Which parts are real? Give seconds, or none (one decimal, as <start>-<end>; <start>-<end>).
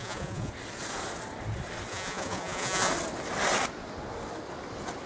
0.5-1.9; 2.9-5.1